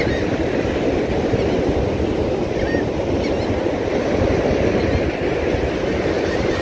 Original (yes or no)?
yes